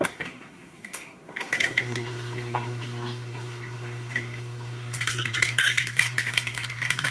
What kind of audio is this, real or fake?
fake